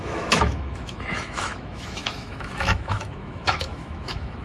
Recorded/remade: remade